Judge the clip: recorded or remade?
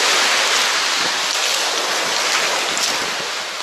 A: recorded